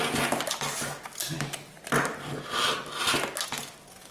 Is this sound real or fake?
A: real